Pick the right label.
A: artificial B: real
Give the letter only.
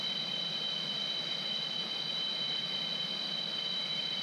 B